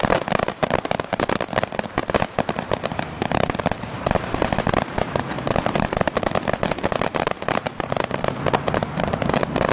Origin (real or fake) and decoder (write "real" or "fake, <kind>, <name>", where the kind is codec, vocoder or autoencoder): fake, vocoder, BigVGAN v2